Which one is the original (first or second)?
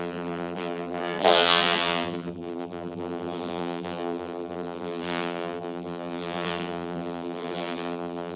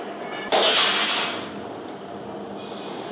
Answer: second